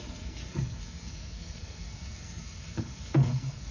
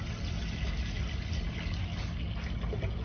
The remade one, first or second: first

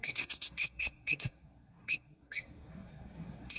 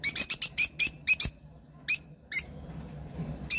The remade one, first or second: first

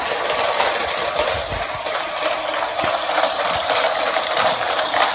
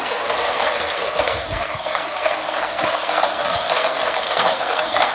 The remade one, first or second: second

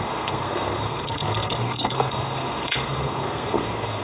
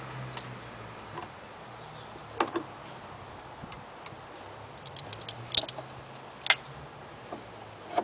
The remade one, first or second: first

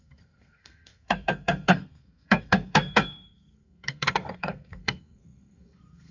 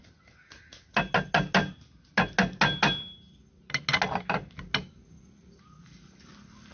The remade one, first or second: first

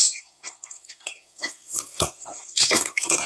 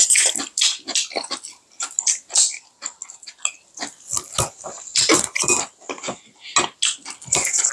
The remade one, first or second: first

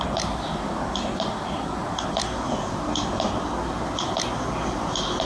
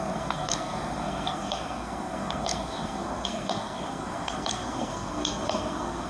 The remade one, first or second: second